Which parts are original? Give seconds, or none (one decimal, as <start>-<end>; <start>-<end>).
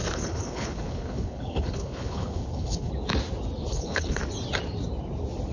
2.9-3.7; 4.2-5.5